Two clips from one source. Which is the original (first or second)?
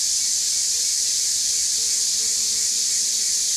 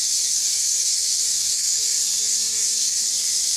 first